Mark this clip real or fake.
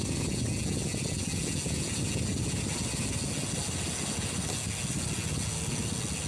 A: real